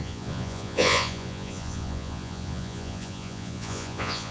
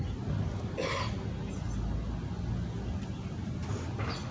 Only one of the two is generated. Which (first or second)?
first